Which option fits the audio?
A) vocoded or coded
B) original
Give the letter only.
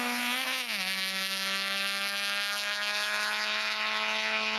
A